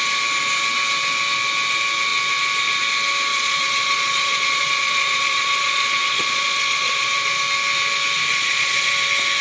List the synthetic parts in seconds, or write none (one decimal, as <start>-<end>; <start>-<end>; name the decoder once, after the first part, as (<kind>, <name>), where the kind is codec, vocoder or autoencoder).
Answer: 3.3-7.4 (vocoder, Vocos); 8.3-8.9